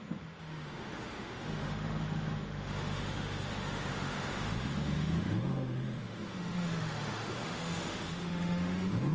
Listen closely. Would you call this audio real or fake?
fake